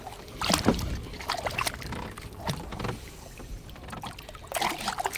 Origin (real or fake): real